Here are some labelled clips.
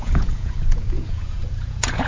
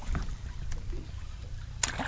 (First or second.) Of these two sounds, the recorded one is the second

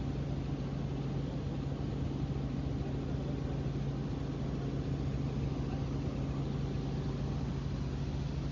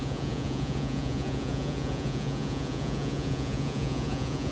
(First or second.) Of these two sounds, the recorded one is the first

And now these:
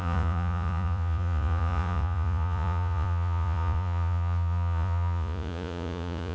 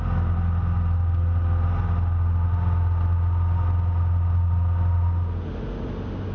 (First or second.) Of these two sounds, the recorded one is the second